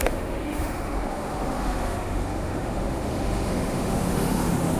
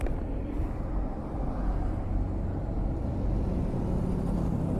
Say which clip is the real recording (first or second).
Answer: second